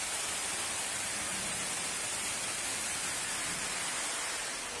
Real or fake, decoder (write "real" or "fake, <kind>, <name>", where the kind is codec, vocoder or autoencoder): real